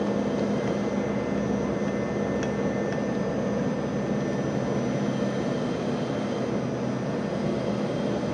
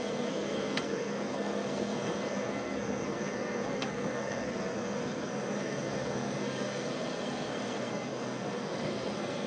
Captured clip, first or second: first